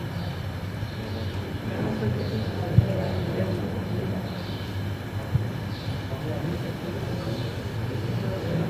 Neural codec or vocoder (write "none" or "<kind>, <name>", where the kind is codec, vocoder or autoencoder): none